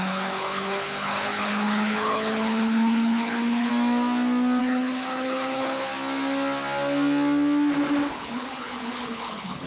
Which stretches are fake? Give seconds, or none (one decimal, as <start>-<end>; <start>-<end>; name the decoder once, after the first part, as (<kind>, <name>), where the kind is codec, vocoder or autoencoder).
0.0-3.7 (codec, HILCodec); 4.6-5.9; 8.1-9.7